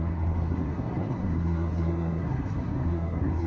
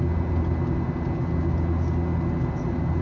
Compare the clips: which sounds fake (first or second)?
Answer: first